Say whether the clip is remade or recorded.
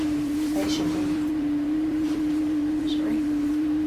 remade